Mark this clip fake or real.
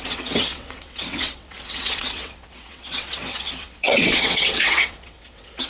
fake